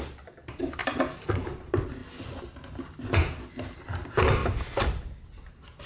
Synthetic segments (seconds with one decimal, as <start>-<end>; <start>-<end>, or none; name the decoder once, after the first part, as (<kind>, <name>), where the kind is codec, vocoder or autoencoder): 0.8-1.3 (vocoder, BigVGAN v2)